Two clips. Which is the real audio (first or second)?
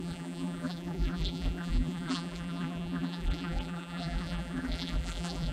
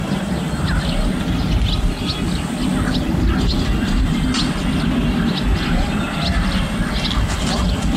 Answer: second